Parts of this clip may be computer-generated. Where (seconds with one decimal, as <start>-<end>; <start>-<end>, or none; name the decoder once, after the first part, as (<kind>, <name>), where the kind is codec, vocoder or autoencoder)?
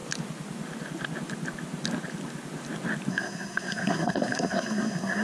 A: 3.1-5.2 (codec, SNAC)